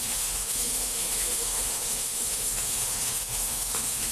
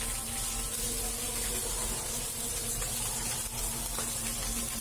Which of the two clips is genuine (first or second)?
second